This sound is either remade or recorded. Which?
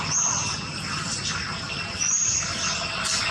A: recorded